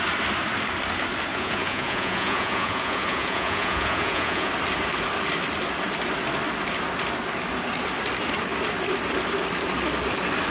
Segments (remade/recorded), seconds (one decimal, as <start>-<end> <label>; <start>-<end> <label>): 0.0-1.3 recorded; 1.3-4.5 remade; 4.5-10.5 recorded